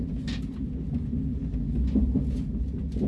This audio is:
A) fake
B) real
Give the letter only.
B